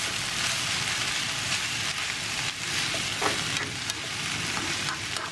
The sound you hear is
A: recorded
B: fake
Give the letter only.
A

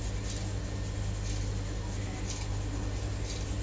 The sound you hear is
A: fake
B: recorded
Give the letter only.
B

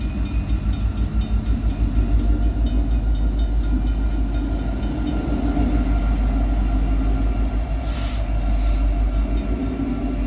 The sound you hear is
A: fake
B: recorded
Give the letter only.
B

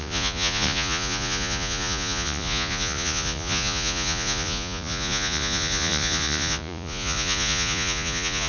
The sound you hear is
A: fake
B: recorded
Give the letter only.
A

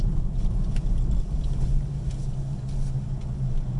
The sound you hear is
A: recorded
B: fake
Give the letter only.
A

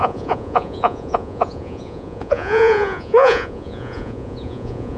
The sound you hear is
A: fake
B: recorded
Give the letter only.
A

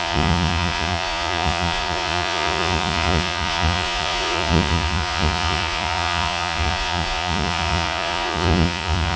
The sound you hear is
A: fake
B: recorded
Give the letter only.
A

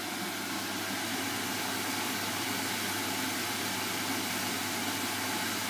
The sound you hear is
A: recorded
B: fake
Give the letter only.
A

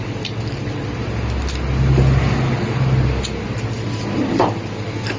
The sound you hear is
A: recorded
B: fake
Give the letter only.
A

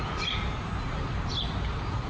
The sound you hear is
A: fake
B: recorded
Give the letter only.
B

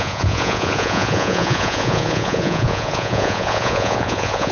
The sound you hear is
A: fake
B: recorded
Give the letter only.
A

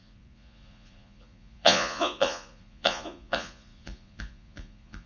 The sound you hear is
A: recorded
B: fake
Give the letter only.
B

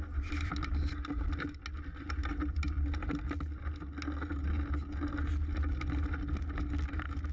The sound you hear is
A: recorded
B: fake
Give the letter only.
A